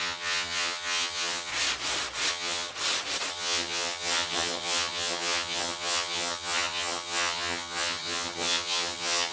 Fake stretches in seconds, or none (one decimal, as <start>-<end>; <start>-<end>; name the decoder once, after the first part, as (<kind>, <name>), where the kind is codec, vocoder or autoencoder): 0.0-1.5 (vocoder, HiFi-GAN); 2.3-2.7; 3.3-9.3